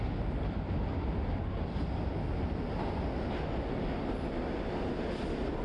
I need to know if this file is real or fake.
real